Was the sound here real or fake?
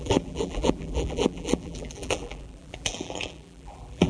fake